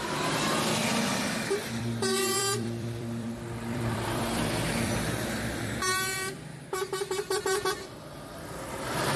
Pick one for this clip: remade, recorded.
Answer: remade